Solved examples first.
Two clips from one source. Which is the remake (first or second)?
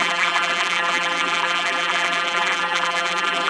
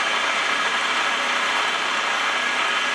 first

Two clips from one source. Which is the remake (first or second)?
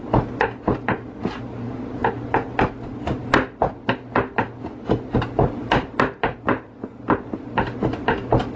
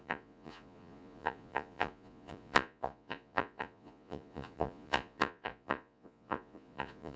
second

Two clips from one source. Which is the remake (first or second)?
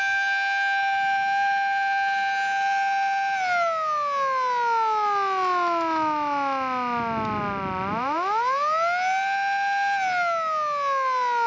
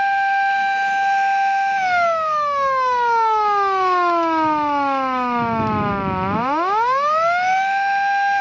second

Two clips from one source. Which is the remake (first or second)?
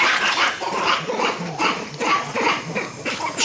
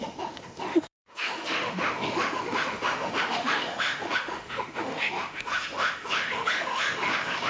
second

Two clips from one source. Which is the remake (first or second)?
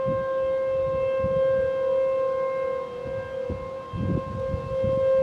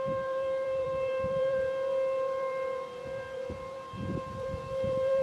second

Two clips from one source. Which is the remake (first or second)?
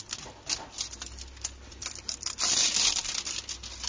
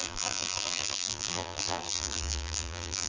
second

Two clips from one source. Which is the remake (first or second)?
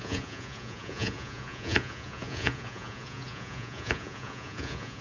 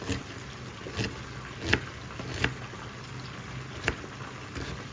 first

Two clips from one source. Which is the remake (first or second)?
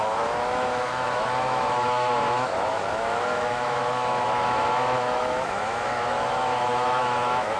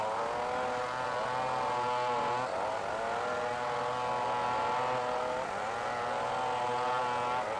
first